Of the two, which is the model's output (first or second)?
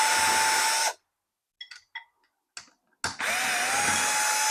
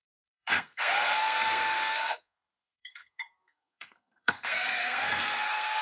second